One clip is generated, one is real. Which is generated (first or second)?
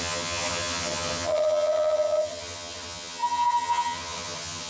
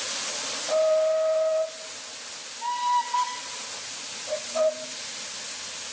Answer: first